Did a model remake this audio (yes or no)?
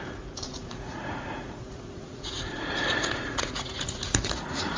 yes